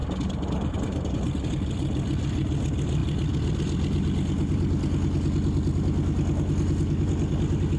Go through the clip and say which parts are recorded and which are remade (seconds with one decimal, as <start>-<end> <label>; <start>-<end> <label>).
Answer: 0.0-7.8 recorded